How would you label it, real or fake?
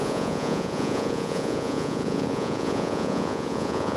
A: fake